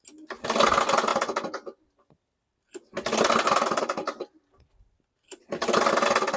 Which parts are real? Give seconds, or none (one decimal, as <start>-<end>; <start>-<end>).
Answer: 0.0-6.4